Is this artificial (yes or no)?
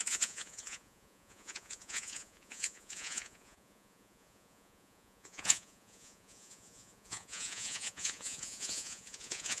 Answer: yes